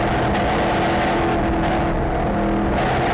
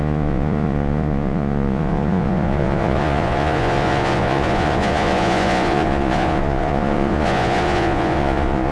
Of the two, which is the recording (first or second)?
first